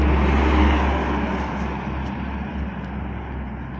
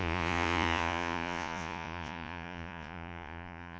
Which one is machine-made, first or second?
second